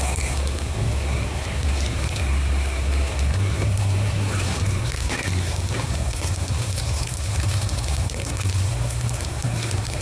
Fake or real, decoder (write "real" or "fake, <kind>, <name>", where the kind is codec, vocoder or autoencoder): fake, codec, SNAC